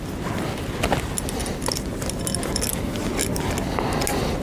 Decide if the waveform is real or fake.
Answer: real